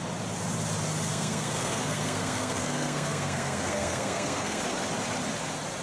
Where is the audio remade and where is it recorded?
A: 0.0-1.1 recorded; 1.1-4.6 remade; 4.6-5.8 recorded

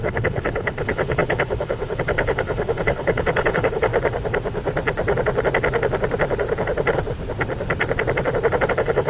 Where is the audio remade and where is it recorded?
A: 0.0-3.9 remade; 3.9-8.7 recorded; 8.7-9.1 remade

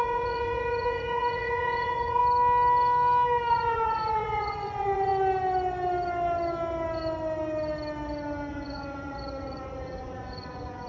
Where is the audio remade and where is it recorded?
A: 0.0-2.2 remade; 2.2-3.5 recorded; 3.5-5.1 remade; 5.1-8.5 recorded; 8.5-10.9 remade

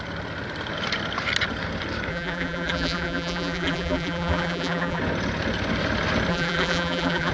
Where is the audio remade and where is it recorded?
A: 0.0-2.1 recorded; 2.1-5.0 remade; 5.0-6.3 recorded; 6.3-7.3 remade

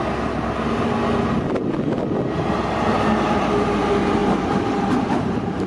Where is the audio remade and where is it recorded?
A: 0.0-5.7 recorded